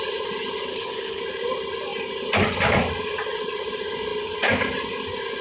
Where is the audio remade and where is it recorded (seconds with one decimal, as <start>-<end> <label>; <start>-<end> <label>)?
0.0-0.7 recorded; 0.7-1.2 remade; 1.2-5.4 recorded